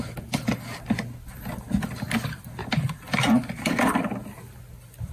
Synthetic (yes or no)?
no